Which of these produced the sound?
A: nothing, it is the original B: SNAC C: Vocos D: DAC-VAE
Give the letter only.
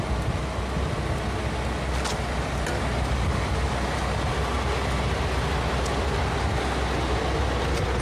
A